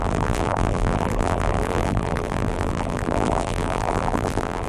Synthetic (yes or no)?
yes